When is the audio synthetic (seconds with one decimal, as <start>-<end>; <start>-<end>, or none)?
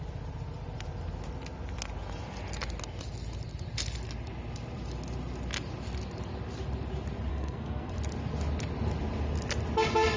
7.3-7.9